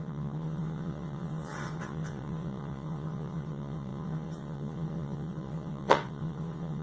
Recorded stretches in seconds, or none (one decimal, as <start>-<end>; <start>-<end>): none